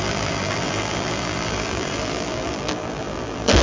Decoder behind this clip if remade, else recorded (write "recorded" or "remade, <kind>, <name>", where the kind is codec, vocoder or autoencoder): remade, vocoder, BigVGAN v2